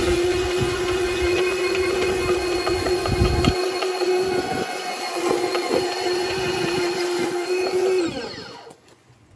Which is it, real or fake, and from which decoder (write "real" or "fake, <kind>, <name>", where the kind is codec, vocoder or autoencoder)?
fake, vocoder, Vocos